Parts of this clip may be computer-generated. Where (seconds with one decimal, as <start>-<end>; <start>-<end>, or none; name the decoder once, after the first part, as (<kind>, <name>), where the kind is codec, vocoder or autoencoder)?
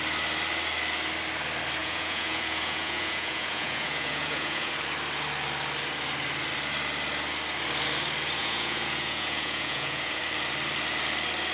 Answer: 1.8-4.7 (vocoder, Vocos); 8.4-10.2